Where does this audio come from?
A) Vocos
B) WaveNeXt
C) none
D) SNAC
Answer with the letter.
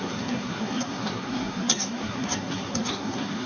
D